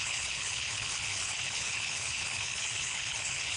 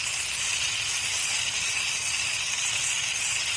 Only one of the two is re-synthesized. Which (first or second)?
first